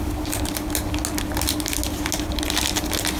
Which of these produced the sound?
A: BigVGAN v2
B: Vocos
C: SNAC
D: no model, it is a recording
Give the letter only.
D